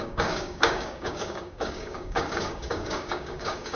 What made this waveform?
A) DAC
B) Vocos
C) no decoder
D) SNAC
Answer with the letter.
A